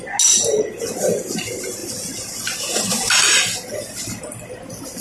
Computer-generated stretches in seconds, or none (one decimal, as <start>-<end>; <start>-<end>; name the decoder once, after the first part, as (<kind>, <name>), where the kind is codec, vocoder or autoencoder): none